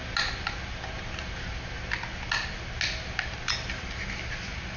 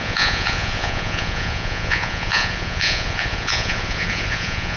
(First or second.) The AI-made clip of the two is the second